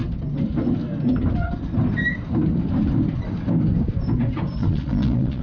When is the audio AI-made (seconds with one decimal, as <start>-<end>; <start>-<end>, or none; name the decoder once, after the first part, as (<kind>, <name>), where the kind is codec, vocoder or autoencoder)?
4.6-5.4 (vocoder, Vocos)